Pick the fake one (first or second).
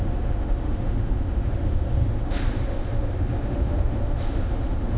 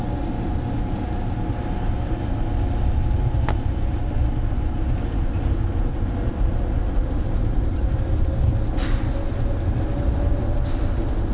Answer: first